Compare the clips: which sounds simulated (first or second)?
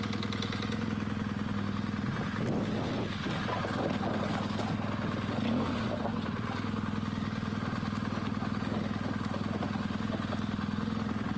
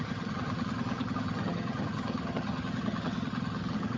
second